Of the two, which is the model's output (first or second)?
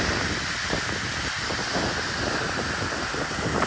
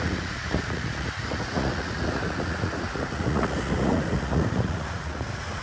second